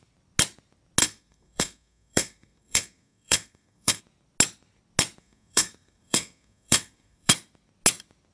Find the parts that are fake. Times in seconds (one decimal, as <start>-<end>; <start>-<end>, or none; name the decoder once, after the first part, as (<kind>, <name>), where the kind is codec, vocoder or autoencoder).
1.0-4.0 (codec, SNAC); 5.2-7.3